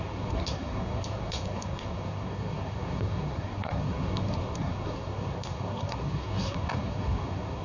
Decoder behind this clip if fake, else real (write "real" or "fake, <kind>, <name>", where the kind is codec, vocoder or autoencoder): fake, codec, SNAC